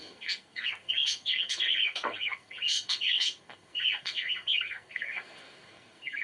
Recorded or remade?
remade